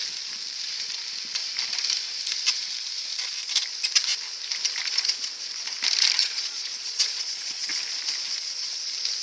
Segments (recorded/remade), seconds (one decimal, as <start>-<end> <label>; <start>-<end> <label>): 0.0-6.2 recorded; 6.2-7.7 remade; 7.7-9.2 recorded